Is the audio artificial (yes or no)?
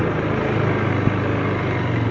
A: no